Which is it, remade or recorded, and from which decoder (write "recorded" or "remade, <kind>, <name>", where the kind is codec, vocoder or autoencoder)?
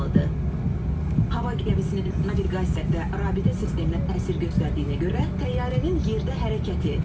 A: recorded